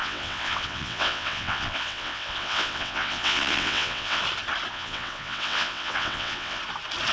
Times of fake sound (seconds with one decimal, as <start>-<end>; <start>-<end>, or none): 0.0-4.2; 4.7-6.6